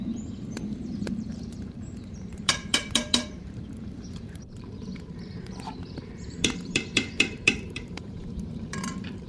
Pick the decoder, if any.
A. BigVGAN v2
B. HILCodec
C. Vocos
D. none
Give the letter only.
A